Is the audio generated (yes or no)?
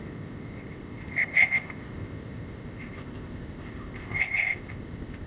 yes